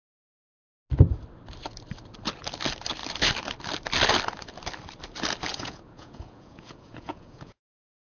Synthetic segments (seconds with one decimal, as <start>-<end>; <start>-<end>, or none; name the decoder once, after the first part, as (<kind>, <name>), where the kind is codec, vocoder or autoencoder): 5.5-8.1 (vocoder, Vocos)